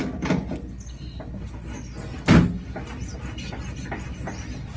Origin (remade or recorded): recorded